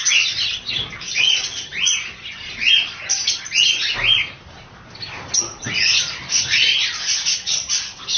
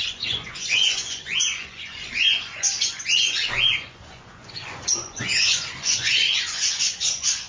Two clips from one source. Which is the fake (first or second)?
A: second